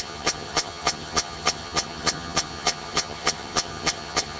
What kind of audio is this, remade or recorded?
remade